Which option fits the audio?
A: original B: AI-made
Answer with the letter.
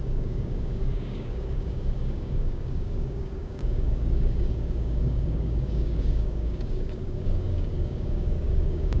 B